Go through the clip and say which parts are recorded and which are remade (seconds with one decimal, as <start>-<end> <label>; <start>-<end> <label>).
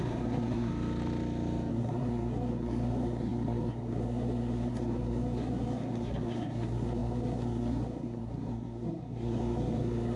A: 0.0-0.7 remade; 0.7-1.7 recorded; 1.7-10.2 remade